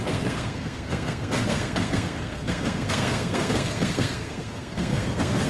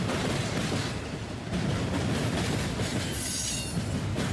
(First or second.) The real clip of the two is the second